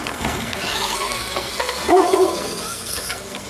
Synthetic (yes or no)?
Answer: yes